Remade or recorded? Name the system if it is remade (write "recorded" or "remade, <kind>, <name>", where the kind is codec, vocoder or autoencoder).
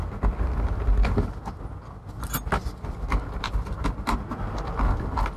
recorded